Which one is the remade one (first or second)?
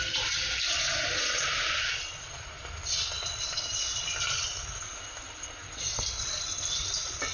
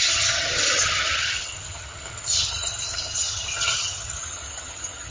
second